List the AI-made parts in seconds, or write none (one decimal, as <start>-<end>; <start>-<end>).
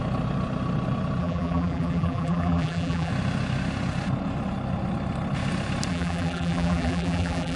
1.2-3.1; 5.9-7.6